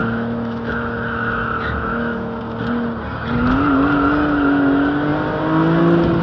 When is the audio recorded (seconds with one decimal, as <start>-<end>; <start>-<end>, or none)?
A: 2.4-6.2